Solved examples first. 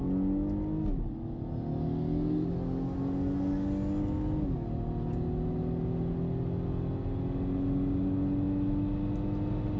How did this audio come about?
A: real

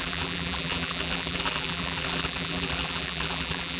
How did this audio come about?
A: fake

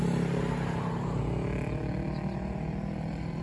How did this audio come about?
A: real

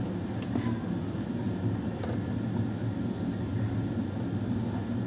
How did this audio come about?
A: real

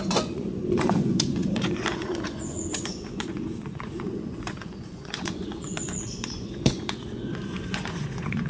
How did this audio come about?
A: fake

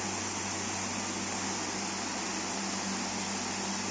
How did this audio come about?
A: real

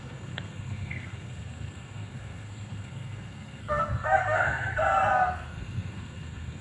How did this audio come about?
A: fake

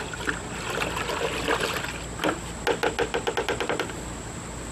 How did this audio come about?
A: real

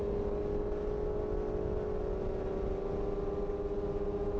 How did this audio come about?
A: real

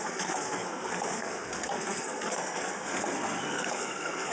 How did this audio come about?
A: fake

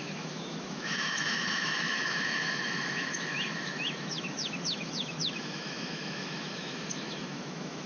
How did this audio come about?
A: fake